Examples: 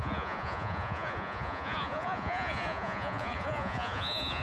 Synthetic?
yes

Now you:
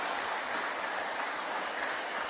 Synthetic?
no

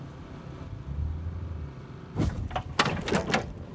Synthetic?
no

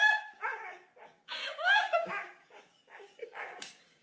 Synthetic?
yes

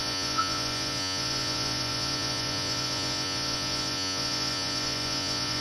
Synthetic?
yes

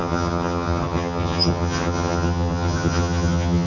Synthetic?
yes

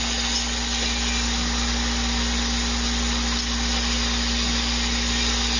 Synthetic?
no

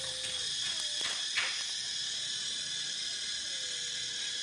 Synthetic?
no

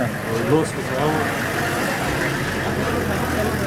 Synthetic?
no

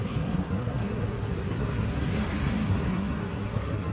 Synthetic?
yes